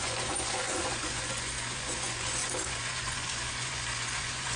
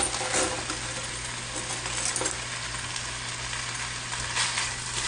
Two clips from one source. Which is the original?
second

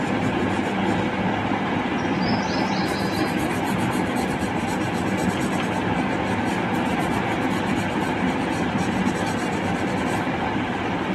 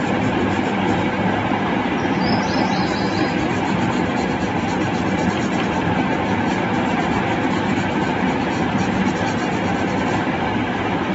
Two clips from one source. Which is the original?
first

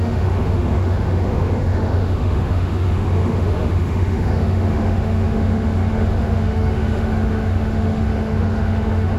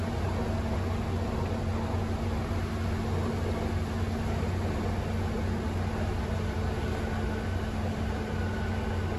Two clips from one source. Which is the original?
second